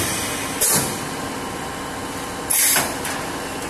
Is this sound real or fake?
real